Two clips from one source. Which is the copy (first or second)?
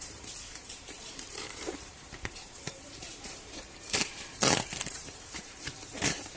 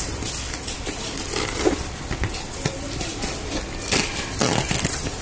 first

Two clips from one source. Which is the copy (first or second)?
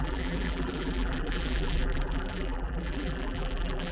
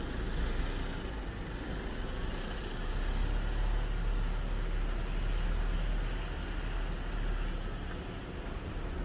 first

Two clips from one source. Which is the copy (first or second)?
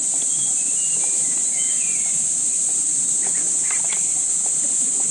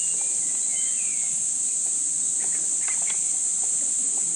first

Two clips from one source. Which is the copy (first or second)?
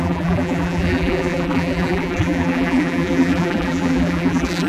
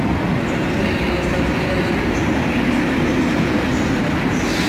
first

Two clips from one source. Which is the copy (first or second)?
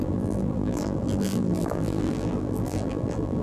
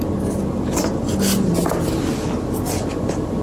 first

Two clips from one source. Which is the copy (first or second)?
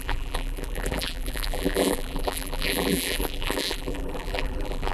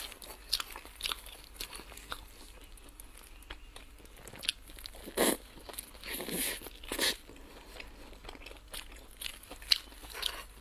first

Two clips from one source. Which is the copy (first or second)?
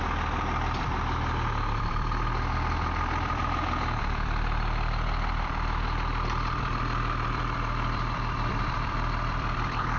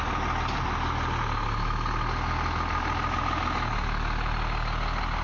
first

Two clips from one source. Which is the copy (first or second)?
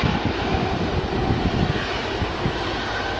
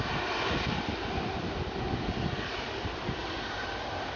second